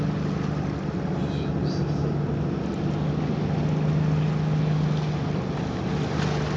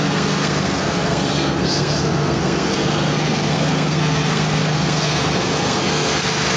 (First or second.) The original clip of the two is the first